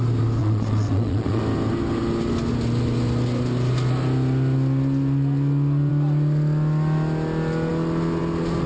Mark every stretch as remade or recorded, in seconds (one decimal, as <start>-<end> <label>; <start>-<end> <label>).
0.0-0.4 recorded; 0.4-1.4 remade; 1.4-8.7 recorded